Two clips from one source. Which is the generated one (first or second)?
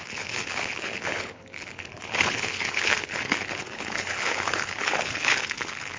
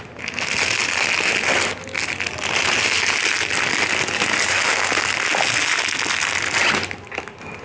first